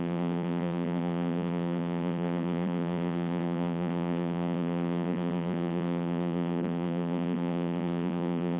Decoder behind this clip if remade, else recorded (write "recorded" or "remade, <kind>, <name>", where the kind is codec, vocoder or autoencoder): remade, vocoder, BigVGAN v2